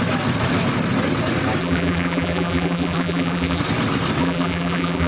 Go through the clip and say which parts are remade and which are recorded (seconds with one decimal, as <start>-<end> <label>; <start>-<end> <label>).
0.0-1.6 recorded; 1.6-3.6 remade; 3.6-4.2 recorded; 4.2-5.1 remade